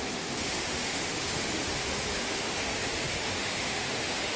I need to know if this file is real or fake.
fake